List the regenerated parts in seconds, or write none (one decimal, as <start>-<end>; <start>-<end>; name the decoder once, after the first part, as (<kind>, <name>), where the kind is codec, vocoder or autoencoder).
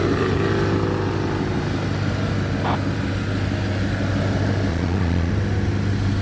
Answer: 4.7-5.3 (vocoder, Vocos)